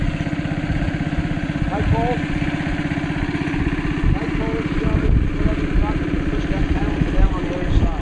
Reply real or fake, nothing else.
real